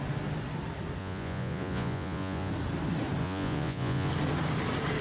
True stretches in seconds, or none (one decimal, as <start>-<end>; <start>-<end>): 0.0-1.0; 2.5-3.2; 4.1-5.0